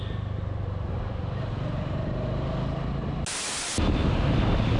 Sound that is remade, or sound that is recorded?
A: recorded